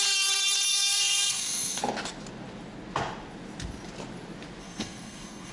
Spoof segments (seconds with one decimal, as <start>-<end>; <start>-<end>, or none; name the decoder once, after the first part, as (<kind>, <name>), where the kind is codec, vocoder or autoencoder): 0.7-1.8 (codec, SNAC); 4.6-5.5